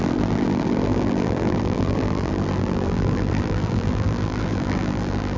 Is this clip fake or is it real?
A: fake